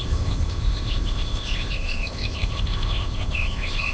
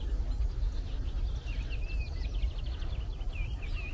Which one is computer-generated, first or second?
first